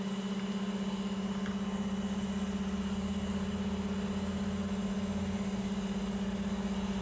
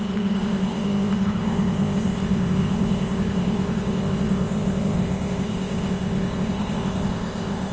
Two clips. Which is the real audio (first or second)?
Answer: first